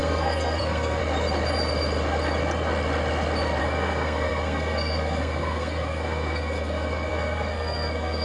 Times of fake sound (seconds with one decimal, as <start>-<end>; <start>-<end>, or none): 0.0-1.0; 3.6-8.2